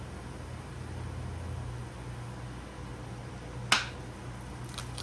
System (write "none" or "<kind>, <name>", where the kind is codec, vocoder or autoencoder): none